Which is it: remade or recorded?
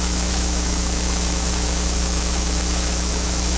remade